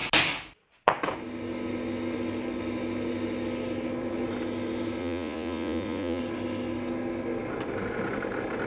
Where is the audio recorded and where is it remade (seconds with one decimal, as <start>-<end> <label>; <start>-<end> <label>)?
0.0-5.0 recorded; 5.0-6.2 remade; 6.2-8.7 recorded